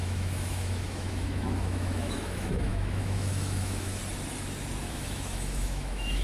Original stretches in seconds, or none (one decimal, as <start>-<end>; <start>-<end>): 4.0-4.8